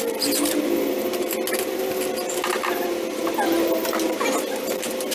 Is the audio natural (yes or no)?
yes